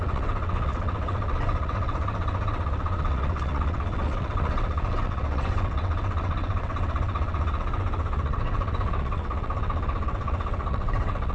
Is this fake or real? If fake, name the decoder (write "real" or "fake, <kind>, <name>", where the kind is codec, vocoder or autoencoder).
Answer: fake, vocoder, WaveNeXt